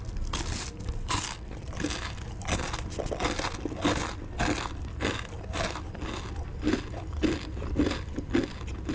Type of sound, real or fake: real